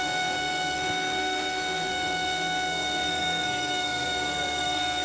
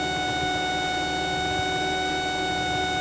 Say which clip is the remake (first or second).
first